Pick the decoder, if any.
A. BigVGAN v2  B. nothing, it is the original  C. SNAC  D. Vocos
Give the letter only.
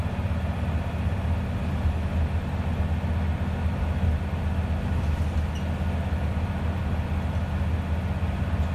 B